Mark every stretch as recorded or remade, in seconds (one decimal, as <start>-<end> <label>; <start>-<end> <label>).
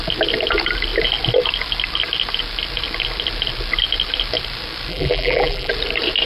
0.0-4.9 recorded; 4.9-5.7 remade; 5.7-6.3 recorded